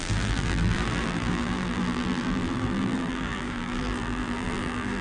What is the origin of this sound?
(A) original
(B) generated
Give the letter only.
B